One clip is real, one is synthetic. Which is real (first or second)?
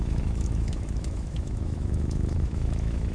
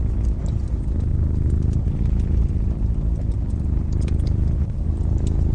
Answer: second